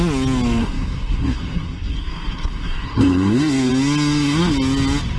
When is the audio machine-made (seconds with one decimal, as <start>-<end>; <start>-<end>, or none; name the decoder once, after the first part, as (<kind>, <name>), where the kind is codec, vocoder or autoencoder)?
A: 0.6-3.7 (codec, SNAC)